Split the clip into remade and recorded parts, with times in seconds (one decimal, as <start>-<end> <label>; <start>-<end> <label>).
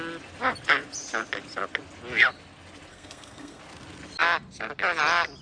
0.0-2.9 recorded; 2.9-3.6 remade; 3.6-5.4 recorded